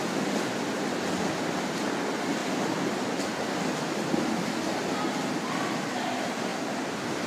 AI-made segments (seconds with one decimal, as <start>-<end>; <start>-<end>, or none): 6.5-7.3